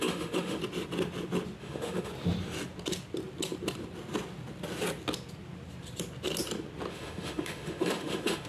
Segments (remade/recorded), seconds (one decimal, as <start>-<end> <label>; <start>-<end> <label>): 0.0-0.6 remade; 0.6-1.6 recorded; 1.6-2.1 remade; 2.1-6.9 recorded; 6.9-8.5 remade